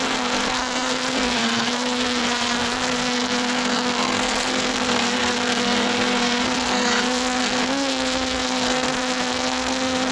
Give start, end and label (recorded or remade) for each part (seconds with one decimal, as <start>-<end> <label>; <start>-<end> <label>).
0.0-10.1 remade